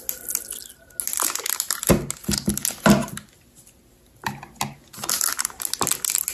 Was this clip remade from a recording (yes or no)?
no